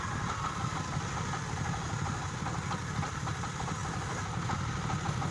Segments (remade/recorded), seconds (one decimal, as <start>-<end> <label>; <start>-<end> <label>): 0.0-5.3 recorded